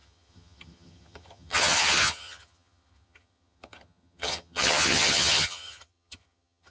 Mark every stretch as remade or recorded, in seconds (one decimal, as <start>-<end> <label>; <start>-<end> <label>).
0.0-6.7 remade